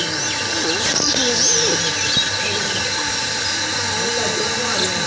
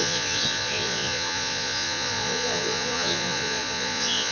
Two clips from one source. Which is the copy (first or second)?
second